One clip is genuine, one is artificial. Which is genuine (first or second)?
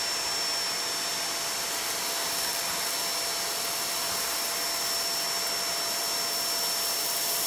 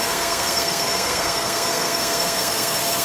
first